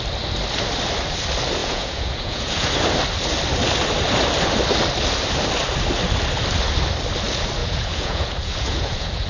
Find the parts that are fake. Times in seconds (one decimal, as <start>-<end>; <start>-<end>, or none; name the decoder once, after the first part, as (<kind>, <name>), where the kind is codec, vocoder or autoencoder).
1.6-2.7 (vocoder, Vocos); 7.6-9.3